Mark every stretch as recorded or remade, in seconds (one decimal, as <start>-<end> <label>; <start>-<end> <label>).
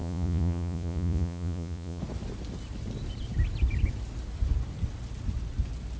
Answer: 0.0-2.0 remade; 2.0-6.0 recorded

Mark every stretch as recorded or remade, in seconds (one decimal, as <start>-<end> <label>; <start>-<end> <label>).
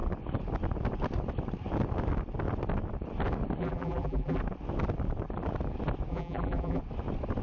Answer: 0.0-3.6 recorded; 3.6-4.4 remade; 4.4-6.1 recorded; 6.1-6.8 remade; 6.8-7.4 recorded